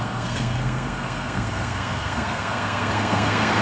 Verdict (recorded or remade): remade